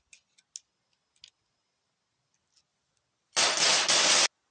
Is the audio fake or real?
real